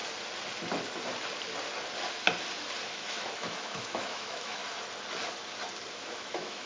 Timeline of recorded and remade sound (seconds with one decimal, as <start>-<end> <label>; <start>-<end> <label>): 0.0-2.9 recorded; 2.9-4.6 remade; 4.6-5.9 recorded; 5.9-6.7 remade